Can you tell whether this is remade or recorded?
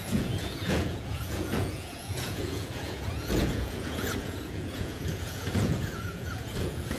remade